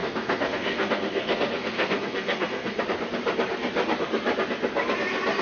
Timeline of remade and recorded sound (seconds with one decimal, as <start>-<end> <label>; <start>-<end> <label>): 0.0-2.8 remade; 2.8-5.4 recorded